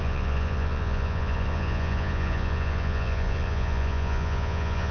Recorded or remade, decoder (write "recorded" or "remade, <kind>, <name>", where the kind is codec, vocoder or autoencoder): remade, vocoder, Vocos